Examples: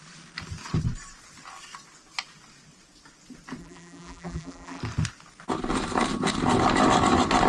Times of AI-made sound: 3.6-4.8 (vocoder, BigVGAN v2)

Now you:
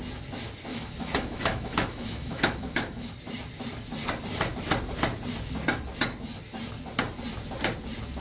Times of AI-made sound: 0.7-3.1 (autoencoder, DAC-VAE)

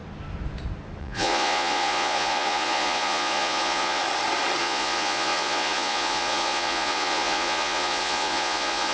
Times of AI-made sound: 1.0-4.0 (vocoder, Vocos); 4.6-8.9

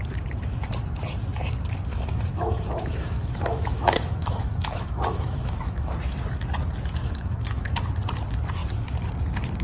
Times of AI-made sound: 1.9-5.9 (autoencoder, DAC-VAE); 7.0-7.7

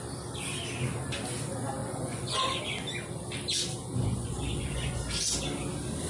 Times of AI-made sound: 1.8-2.6 (vocoder, Vocos); 3.8-5.0

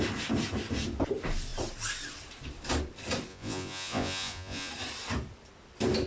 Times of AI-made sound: 3.3-4.7 (vocoder, Vocos)